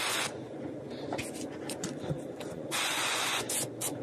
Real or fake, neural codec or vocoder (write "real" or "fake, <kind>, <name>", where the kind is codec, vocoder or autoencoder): fake, vocoder, Vocos